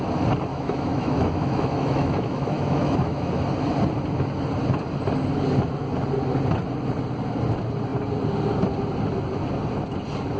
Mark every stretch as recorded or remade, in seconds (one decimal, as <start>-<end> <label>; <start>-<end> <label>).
0.0-0.5 recorded; 0.5-3.3 remade; 3.3-10.4 recorded